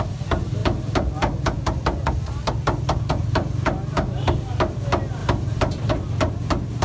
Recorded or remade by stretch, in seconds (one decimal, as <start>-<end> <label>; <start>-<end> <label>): 0.0-5.2 recorded; 5.2-5.9 remade; 5.9-6.8 recorded